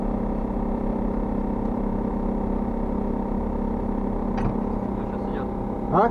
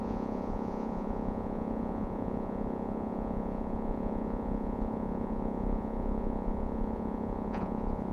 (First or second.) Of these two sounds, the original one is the first